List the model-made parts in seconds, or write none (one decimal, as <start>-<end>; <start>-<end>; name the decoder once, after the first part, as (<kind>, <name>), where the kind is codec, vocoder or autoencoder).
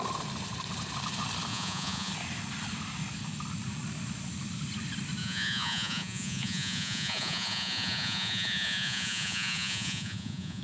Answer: 1.5-2.1 (vocoder, Vocos); 5.2-10.6